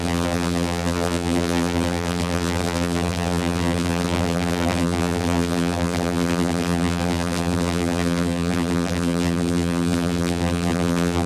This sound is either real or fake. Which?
fake